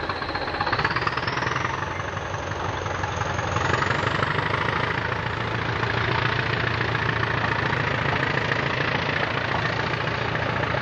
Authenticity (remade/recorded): recorded